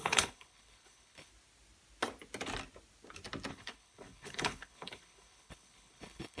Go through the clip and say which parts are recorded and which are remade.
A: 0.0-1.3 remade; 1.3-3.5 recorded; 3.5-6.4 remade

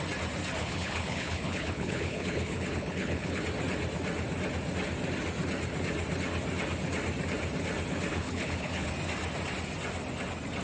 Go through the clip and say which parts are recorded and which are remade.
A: 0.0-0.6 recorded; 0.6-3.4 remade; 3.4-8.1 recorded; 8.1-8.9 remade; 8.9-10.6 recorded

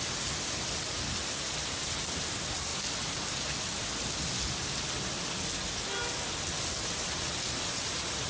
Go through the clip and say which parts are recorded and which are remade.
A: 0.0-8.3 recorded

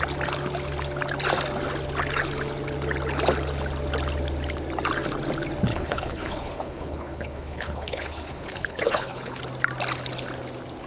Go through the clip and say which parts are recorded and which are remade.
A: 0.0-5.7 recorded; 5.7-9.4 remade; 9.4-10.9 recorded

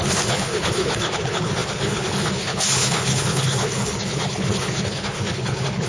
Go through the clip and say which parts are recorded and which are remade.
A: 0.0-5.9 remade

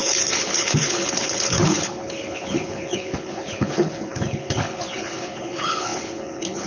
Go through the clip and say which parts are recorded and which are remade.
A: 0.0-6.7 remade

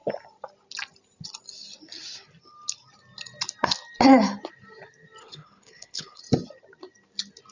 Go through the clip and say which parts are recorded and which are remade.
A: 0.0-5.2 recorded; 5.2-6.2 remade; 6.2-7.5 recorded

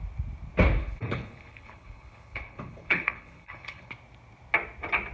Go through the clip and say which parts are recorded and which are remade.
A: 0.0-0.8 recorded; 0.8-3.9 remade; 3.9-5.1 recorded